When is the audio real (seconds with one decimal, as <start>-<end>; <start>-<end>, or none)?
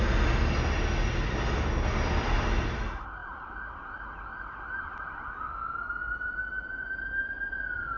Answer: 0.0-8.0